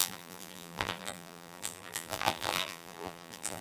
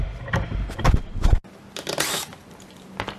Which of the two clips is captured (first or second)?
second